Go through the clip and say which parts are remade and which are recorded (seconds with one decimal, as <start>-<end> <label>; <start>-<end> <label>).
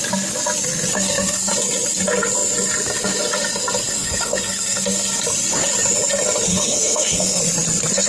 0.0-0.9 recorded; 0.9-1.5 remade; 1.5-4.0 recorded; 4.0-5.2 remade; 5.2-6.5 recorded; 6.5-7.4 remade; 7.4-8.1 recorded